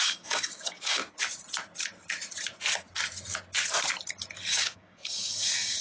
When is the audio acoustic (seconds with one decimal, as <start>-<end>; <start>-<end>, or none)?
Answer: 1.0-4.5